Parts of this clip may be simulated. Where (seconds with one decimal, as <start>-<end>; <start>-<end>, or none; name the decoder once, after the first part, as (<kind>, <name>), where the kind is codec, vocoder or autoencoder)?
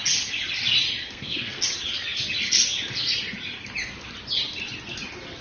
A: 1.0-1.6 (codec, SNAC)